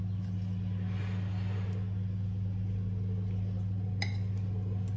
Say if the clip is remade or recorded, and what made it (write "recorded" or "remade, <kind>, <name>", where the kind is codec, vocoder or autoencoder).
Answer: recorded